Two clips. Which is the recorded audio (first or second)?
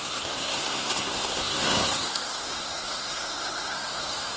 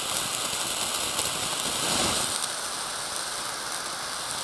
second